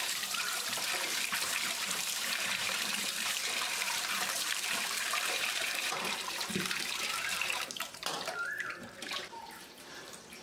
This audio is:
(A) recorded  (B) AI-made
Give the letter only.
B